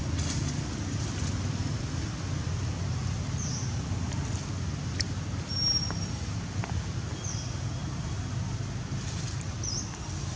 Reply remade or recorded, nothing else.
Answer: recorded